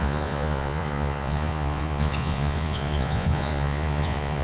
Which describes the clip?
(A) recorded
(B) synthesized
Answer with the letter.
B